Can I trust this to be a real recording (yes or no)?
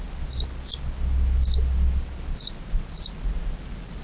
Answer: yes